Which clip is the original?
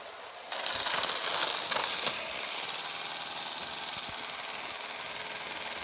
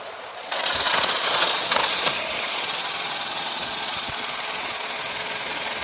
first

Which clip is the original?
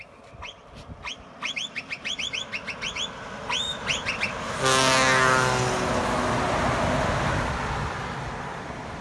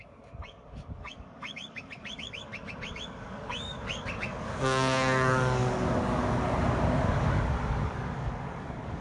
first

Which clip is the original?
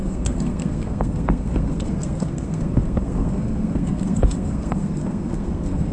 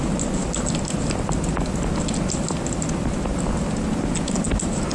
second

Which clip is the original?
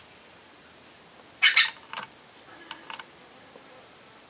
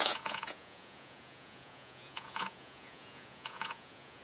first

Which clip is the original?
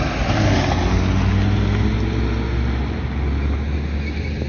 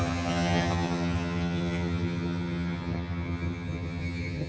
first